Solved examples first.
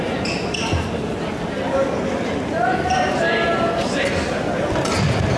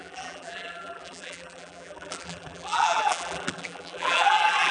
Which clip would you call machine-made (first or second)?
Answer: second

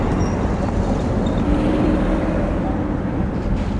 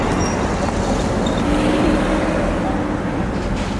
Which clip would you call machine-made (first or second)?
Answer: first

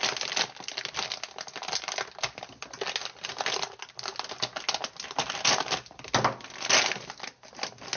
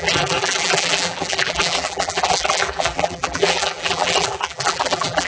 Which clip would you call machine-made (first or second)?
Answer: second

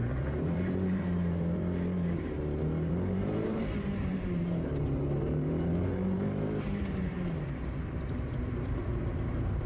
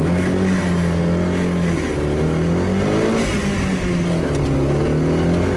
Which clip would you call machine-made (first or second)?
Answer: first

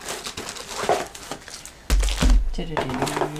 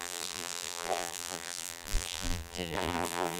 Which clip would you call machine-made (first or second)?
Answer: second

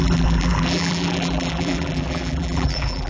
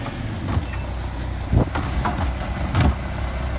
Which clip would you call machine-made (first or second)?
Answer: first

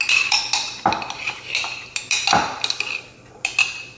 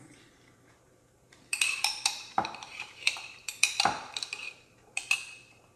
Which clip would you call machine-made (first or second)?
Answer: second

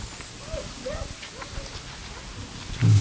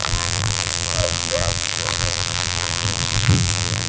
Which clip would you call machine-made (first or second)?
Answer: second